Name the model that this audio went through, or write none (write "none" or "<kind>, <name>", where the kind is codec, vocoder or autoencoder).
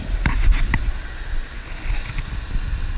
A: none